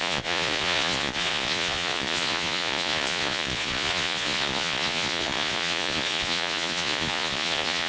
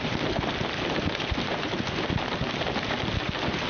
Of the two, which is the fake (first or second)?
first